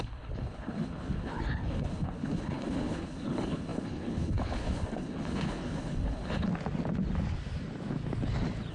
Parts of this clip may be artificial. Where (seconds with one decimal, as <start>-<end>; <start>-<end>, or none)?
0.0-6.5

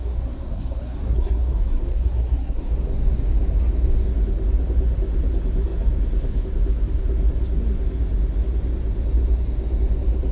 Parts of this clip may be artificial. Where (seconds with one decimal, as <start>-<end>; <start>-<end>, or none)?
0.0-2.7

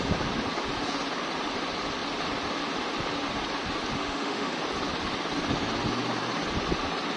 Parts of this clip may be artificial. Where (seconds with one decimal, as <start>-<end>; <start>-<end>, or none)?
4.0-4.6

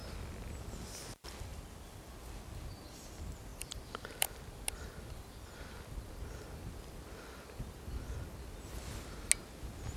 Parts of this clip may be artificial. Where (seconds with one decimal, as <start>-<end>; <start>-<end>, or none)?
1.5-2.0; 3.5-6.1

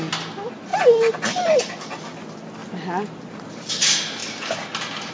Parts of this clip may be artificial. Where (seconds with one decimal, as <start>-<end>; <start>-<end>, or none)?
none